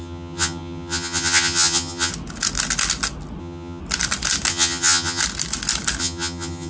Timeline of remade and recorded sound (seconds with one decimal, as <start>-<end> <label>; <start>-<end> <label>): 0.0-2.1 remade; 2.1-3.4 recorded; 3.4-3.8 remade; 3.8-4.5 recorded; 4.5-5.2 remade; 5.2-6.0 recorded; 6.0-6.7 remade